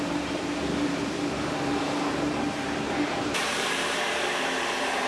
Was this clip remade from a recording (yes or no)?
yes